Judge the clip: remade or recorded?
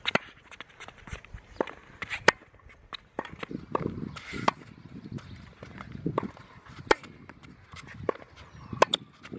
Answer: recorded